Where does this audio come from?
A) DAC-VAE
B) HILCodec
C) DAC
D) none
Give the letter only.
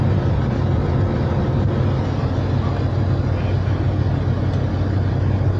D